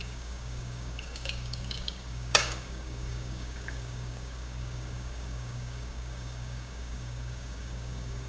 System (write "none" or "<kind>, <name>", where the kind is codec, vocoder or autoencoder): codec, DAC